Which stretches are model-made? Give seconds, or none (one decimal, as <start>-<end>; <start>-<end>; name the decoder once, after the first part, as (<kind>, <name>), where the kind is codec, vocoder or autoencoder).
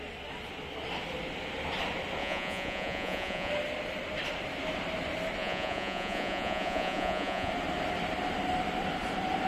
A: 2.2-3.5 (vocoder, Vocos); 5.4-7.5